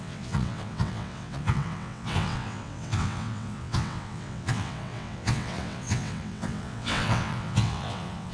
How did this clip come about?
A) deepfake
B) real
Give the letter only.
A